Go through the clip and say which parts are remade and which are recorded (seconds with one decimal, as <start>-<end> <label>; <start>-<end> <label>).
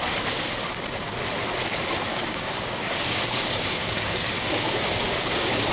0.0-2.1 recorded; 2.1-5.7 remade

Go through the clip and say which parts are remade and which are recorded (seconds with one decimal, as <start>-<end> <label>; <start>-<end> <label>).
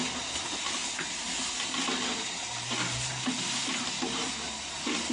0.0-5.1 recorded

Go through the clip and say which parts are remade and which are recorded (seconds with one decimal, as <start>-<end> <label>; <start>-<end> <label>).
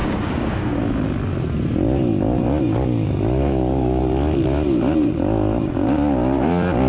0.0-0.8 remade; 0.8-3.4 recorded; 3.4-4.0 remade; 4.0-6.9 recorded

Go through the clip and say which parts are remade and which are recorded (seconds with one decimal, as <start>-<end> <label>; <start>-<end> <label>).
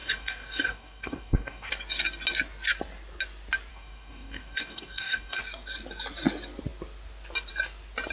0.0-1.7 remade; 1.7-3.7 recorded; 3.7-5.4 remade; 5.4-8.1 recorded